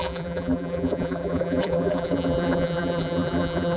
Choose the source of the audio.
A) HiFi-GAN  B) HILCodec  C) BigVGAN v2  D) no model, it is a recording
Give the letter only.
C